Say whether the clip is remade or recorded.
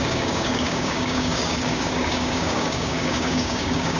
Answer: remade